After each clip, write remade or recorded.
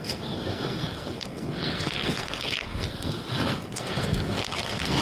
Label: remade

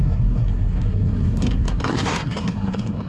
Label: remade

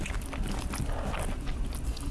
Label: recorded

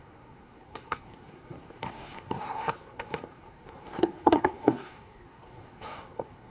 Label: remade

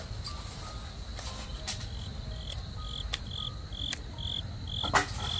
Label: recorded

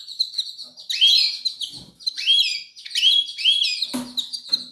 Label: recorded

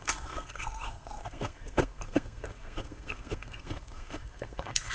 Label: remade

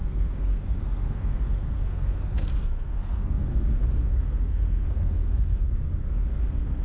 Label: remade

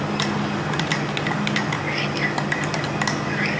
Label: recorded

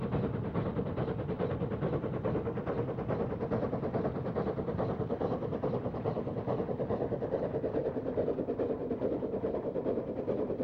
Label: recorded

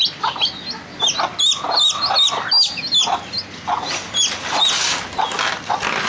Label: recorded